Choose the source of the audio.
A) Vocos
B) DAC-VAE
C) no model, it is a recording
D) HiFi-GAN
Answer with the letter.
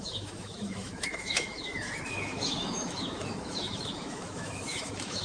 B